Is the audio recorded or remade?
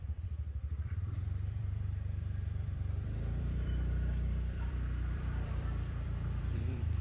remade